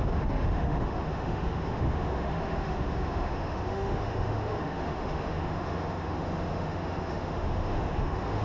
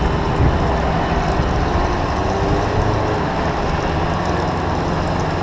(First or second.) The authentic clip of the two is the second